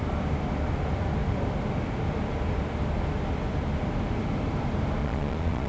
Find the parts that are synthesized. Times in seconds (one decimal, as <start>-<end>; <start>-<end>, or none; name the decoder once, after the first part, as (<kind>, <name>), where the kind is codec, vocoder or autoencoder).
5.0-5.7 (vocoder, Vocos)

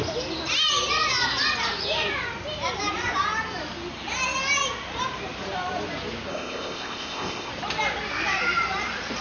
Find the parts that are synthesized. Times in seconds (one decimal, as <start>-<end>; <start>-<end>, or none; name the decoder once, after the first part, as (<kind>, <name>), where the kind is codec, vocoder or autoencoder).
6.3-7.5 (codec, ZipCodec)

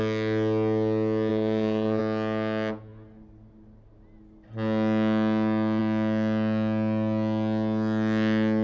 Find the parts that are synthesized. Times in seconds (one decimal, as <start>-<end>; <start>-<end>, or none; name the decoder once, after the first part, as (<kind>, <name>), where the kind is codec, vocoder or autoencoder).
1.3-2.0 (vocoder, Vocos)